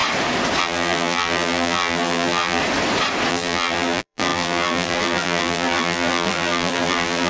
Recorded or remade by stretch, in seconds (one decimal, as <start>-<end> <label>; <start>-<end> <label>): 0.0-0.6 recorded; 0.6-2.6 remade; 2.6-3.3 recorded; 3.3-7.3 remade